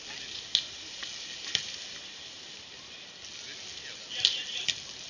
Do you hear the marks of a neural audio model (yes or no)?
no